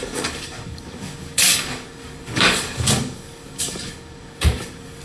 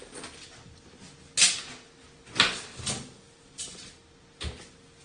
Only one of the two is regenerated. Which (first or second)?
first